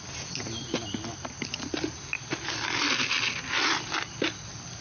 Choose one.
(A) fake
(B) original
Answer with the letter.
B